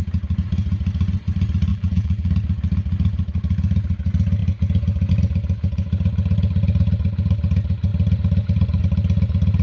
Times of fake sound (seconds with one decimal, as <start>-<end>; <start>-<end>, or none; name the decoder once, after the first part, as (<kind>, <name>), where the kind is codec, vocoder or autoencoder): 1.7-2.3 (vocoder, BigVGAN v2)